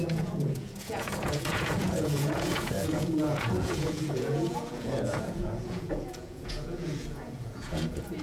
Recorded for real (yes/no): no